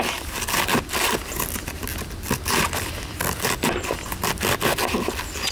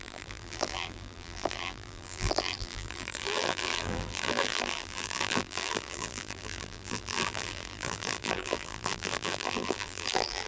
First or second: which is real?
first